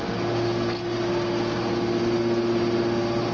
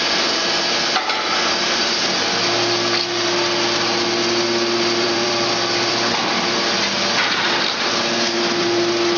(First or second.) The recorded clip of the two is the first